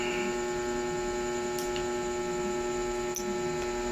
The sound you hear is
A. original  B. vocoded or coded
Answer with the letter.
A